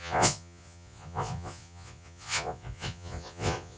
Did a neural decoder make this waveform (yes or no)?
yes